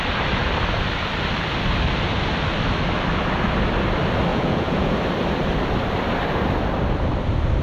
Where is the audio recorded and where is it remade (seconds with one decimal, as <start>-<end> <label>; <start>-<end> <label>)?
0.0-4.3 recorded; 4.3-4.9 remade; 4.9-7.6 recorded